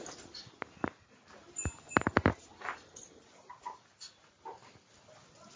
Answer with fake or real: real